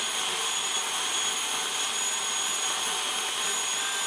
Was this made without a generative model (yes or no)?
yes